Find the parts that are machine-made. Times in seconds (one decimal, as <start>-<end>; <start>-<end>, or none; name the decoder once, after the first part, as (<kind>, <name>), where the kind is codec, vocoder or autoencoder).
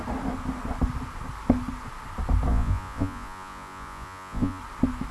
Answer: 2.5-4.6 (vocoder, Vocos)